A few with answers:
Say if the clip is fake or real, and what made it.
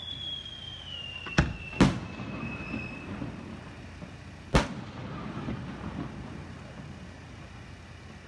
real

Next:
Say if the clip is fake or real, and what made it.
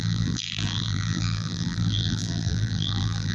fake, vocoder, BigVGAN v2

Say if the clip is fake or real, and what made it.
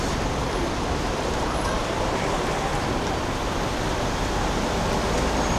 real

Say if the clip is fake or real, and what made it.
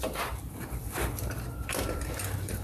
fake, vocoder, BigVGAN v2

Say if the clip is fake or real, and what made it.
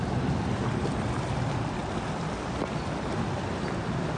fake, vocoder, BigVGAN v2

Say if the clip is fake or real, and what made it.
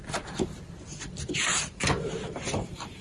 fake, vocoder, BigVGAN v2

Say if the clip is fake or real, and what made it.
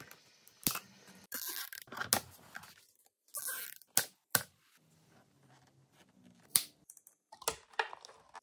real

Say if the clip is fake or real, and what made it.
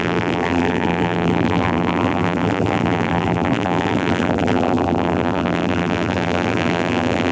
fake, vocoder, BigVGAN v2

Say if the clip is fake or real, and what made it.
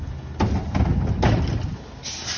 real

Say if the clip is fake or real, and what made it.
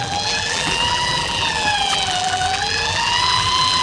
fake, vocoder, BigVGAN v2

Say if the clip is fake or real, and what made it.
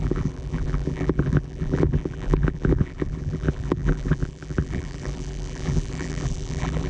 fake, vocoder, BigVGAN v2